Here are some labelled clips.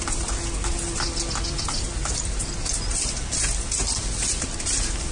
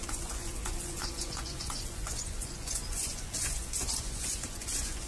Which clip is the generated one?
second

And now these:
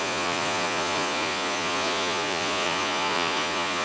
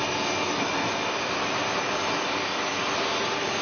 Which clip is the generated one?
first